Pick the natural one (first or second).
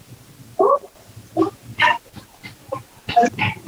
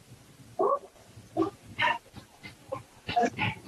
first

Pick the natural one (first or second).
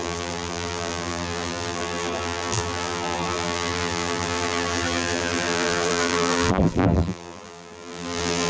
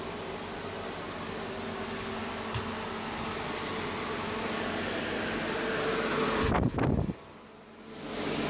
second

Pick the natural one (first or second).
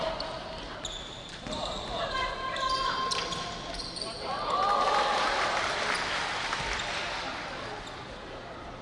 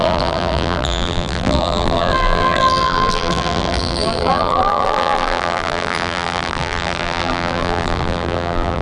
first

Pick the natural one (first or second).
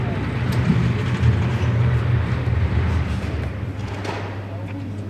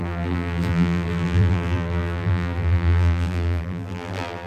first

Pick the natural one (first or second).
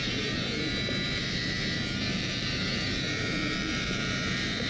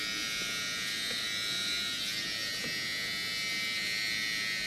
second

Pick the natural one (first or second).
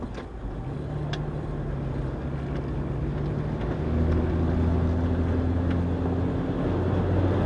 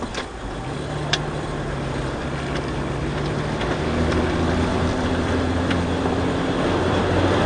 first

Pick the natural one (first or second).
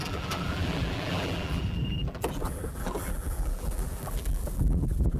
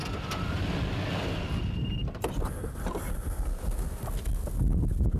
second